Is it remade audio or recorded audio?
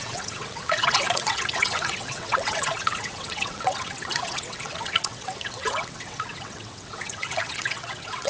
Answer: remade